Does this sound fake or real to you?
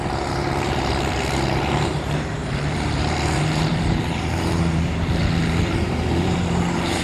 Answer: fake